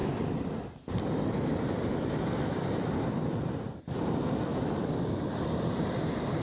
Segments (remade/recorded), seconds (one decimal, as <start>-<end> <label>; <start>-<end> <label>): 0.0-3.8 remade; 3.8-6.4 recorded